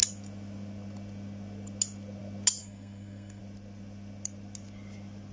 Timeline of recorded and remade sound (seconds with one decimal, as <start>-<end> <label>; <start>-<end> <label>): 0.0-2.6 recorded; 2.6-3.4 remade; 3.4-5.3 recorded